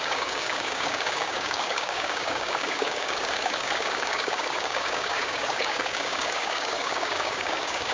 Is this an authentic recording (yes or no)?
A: no